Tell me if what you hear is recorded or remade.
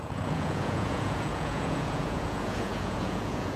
remade